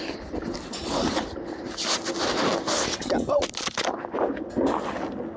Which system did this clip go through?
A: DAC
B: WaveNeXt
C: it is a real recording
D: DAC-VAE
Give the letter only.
C